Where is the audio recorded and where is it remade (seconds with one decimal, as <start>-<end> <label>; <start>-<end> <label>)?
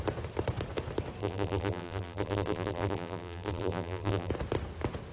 0.0-1.2 recorded; 1.2-4.3 remade; 4.3-5.1 recorded